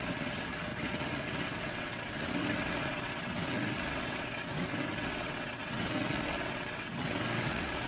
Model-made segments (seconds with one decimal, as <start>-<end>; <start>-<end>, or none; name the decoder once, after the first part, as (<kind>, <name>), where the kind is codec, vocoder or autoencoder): 0.0-7.9 (vocoder, WaveNeXt)